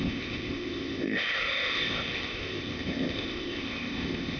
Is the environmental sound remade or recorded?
remade